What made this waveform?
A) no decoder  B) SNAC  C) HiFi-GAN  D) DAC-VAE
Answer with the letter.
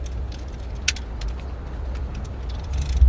A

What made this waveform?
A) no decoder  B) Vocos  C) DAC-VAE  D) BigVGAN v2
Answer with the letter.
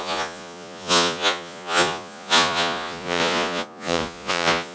B